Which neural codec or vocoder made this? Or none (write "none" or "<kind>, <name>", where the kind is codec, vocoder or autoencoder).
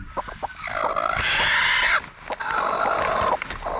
none